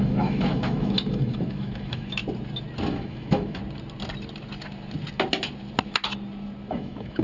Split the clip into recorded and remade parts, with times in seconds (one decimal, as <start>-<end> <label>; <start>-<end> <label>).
0.0-2.2 remade; 2.2-2.9 recorded; 2.9-3.6 remade; 3.6-6.7 recorded; 6.7-7.2 remade